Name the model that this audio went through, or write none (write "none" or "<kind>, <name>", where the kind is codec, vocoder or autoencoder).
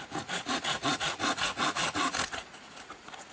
vocoder, Vocos